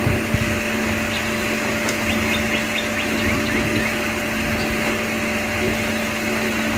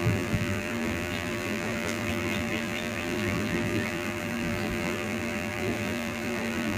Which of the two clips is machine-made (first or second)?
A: second